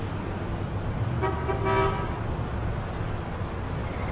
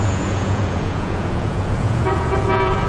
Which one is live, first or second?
first